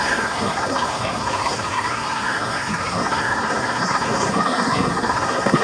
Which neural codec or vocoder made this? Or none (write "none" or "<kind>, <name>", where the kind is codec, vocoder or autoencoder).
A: codec, SNAC